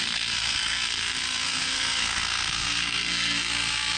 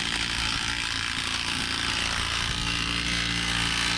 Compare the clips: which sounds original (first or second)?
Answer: second